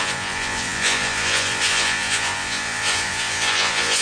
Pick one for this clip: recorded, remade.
remade